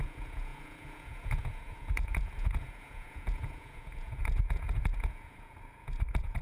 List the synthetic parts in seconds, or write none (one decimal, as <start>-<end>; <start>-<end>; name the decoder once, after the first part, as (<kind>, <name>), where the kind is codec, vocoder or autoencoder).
0.0-6.4 (vocoder, Vocos)